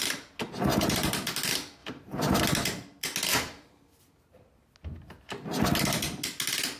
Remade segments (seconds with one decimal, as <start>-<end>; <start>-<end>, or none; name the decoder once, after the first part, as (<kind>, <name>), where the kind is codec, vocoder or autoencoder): 0.7-1.3 (vocoder, BigVGAN v2); 1.8-2.4; 3.3-4.0